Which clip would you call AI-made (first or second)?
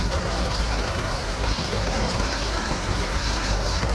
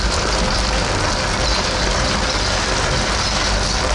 first